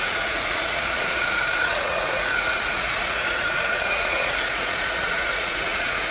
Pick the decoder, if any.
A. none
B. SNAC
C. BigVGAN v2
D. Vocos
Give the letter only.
D